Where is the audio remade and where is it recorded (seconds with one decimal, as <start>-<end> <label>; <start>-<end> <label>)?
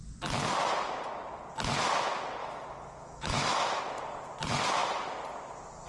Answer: 0.0-2.4 recorded; 2.4-3.8 remade; 3.8-5.9 recorded